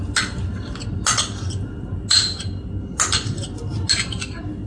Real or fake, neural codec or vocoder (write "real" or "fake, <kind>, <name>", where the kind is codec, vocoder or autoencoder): real